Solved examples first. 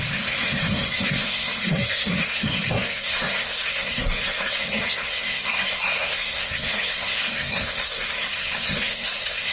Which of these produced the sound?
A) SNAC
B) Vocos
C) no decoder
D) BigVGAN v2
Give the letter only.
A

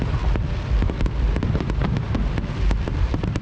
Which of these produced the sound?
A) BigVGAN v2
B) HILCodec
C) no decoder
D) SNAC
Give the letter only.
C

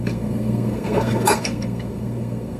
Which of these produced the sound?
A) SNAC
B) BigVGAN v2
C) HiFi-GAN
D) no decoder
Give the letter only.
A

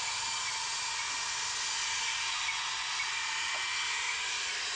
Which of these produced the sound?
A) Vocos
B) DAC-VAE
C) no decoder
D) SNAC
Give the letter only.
C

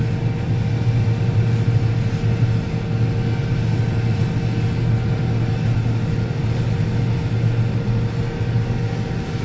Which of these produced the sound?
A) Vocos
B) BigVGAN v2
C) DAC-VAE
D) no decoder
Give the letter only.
D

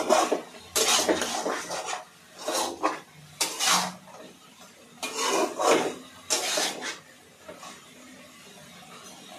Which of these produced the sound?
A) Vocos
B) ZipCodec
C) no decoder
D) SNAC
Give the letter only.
C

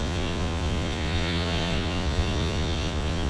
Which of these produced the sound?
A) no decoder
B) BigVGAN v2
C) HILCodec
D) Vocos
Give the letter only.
D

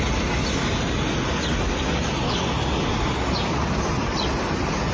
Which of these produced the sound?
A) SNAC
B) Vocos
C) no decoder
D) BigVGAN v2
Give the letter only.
C